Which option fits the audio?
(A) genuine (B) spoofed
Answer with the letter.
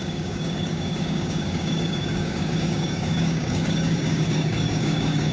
B